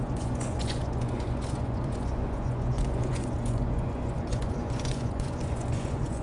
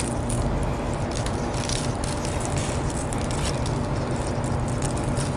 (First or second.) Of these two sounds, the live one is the second